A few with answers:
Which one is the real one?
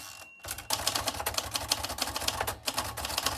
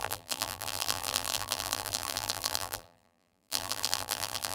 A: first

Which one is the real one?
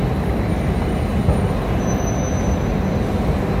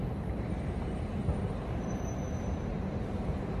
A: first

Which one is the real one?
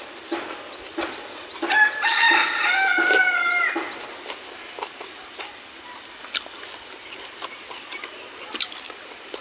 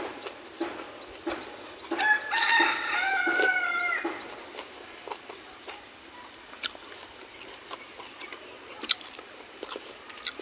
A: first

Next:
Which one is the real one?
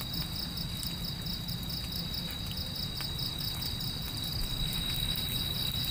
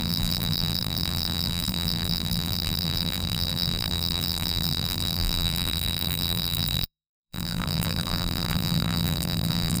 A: first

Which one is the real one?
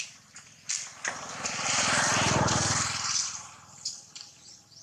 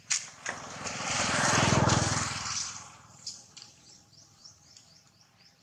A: first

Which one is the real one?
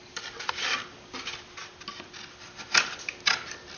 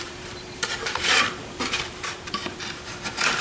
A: first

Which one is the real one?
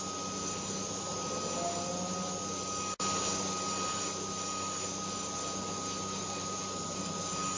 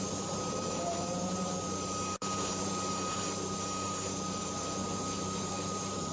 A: first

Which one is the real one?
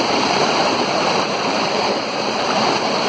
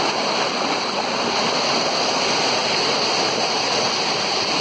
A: second